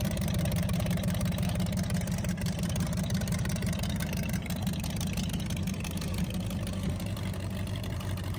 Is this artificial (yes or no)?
yes